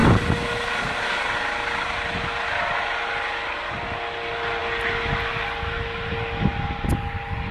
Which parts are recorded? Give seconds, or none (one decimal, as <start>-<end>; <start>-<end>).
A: 0.0-7.5